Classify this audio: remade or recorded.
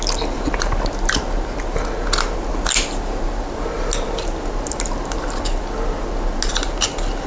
recorded